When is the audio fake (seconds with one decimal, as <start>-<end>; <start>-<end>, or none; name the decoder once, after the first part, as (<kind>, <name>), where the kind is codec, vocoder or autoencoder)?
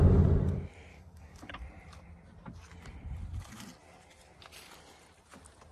0.9-1.5 (codec, DAC)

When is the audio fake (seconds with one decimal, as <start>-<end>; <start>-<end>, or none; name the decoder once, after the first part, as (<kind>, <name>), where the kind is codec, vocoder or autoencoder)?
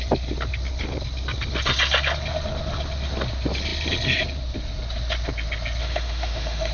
5.8-6.7 (autoencoder, DAC-VAE)